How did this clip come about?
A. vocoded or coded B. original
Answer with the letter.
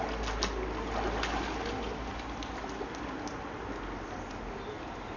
B